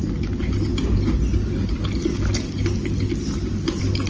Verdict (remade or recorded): recorded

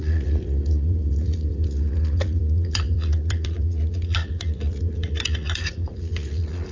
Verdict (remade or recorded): remade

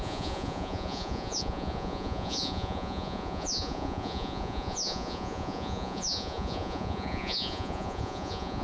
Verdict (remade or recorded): remade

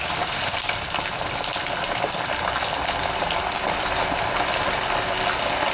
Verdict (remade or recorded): recorded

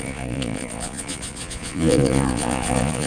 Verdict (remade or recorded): remade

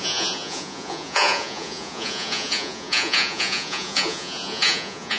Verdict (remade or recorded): remade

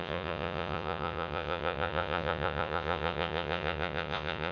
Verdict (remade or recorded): remade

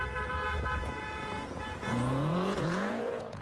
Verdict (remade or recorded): remade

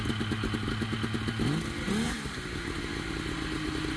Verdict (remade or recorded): recorded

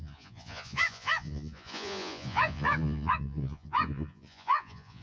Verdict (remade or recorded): remade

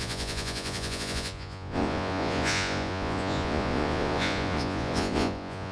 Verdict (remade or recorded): remade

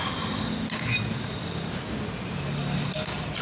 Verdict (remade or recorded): recorded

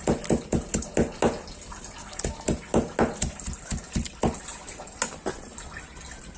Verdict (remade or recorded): recorded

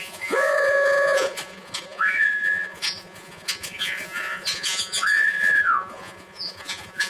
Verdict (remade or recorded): remade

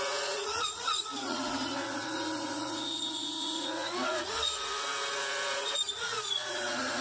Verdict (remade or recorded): remade